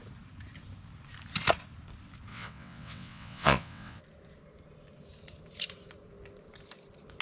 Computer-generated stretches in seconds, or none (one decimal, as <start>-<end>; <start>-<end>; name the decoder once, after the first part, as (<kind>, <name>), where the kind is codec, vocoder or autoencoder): 2.3-4.0 (vocoder, WaveNeXt)